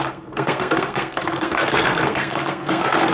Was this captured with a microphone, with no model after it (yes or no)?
no